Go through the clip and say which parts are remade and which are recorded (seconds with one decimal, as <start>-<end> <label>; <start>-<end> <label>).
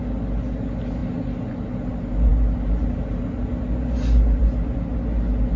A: 0.0-5.6 recorded